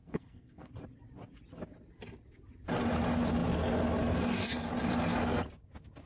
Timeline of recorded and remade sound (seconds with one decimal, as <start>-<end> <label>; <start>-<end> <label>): 0.0-0.7 remade; 0.7-6.1 recorded